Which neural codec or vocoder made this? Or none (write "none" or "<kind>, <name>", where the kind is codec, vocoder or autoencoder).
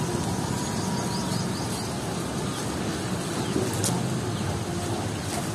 none